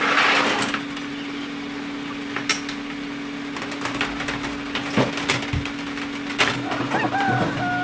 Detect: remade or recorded recorded